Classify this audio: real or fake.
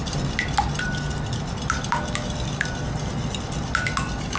real